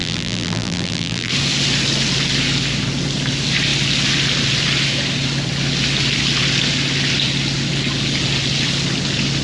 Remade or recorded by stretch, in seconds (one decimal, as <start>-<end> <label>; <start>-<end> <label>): 0.0-1.3 remade; 1.3-9.4 recorded